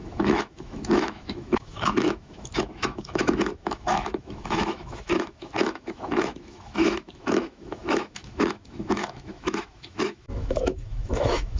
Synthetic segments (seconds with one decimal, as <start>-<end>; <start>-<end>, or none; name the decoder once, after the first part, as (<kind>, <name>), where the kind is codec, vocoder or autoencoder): 0.0-11.6 (autoencoder, DAC-VAE)

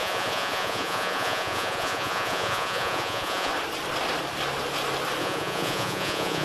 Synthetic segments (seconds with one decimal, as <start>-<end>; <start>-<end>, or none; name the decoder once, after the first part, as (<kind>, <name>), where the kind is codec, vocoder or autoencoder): 0.0-3.5 (vocoder, Vocos); 5.2-6.4

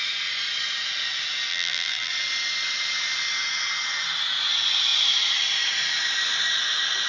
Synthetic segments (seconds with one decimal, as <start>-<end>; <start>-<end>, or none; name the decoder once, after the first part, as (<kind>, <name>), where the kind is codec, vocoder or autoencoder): 1.5-2.1 (vocoder, BigVGAN v2)

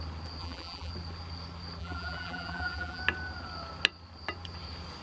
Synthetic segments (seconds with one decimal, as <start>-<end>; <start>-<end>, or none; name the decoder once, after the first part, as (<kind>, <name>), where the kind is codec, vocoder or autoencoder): 0.4-0.9 (vocoder, BigVGAN v2); 1.8-3.0

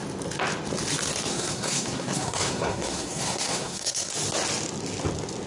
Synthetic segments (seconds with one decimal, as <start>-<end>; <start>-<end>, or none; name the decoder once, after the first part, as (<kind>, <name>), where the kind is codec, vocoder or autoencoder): 1.3-4.1 (codec, SNAC)